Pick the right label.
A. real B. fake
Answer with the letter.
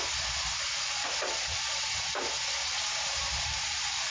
A